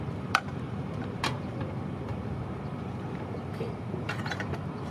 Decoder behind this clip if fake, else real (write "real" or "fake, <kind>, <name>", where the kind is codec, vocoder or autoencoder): fake, vocoder, BigVGAN v2